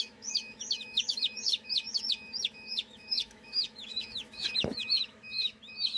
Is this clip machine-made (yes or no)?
yes